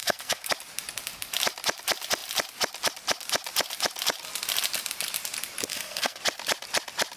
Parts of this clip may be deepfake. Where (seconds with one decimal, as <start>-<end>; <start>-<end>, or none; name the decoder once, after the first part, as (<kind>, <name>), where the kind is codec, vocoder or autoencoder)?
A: 0.0-0.5 (codec, SNAC); 5.7-6.2